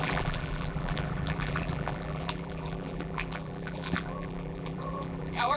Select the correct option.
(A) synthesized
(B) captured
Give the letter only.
A